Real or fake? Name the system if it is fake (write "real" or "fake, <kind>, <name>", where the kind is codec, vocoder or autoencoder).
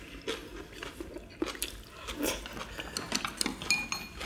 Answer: real